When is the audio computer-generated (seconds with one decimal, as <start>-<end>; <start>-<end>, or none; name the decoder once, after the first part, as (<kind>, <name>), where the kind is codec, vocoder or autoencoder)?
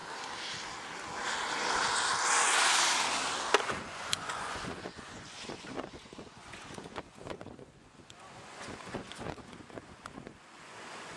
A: 3.6-11.2 (vocoder, Vocos)